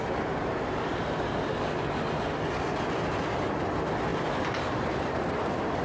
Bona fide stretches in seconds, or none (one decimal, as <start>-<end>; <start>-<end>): 0.0-0.4; 1.5-4.1